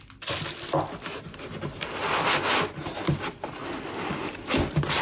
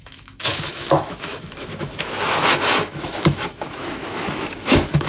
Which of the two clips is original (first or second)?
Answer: first